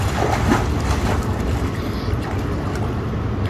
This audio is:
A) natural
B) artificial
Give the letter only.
A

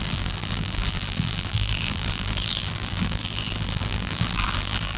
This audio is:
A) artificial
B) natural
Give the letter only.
A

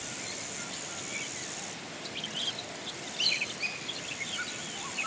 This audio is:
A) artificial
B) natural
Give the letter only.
B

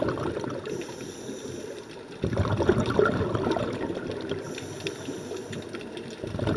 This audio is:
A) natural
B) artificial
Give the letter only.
A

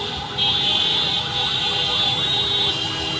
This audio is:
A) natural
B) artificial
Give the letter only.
A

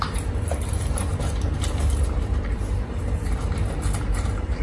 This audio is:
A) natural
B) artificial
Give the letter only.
B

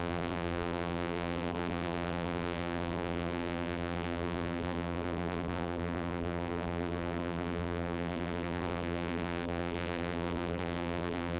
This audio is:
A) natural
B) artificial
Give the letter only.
B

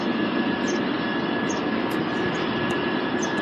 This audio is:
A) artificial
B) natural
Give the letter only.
B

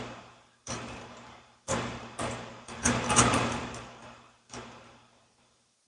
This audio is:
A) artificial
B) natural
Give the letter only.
A